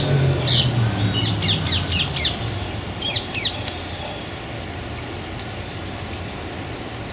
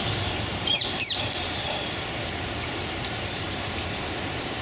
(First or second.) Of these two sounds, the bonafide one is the first